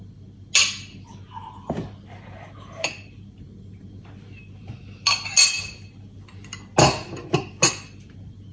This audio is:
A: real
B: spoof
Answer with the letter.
A